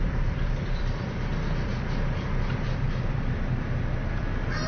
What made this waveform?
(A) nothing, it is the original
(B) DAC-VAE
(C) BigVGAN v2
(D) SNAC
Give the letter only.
C